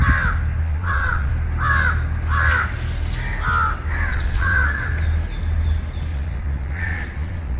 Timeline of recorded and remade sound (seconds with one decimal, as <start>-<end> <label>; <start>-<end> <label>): 0.0-0.6 recorded; 0.6-1.3 remade; 1.3-4.1 recorded; 4.1-4.8 remade; 4.8-6.1 recorded; 6.1-7.6 remade